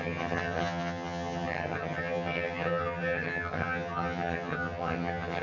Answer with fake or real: fake